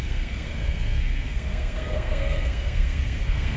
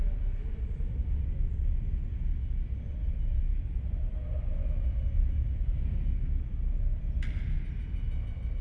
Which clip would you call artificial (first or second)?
first